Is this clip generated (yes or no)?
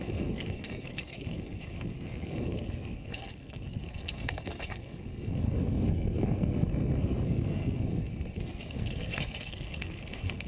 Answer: yes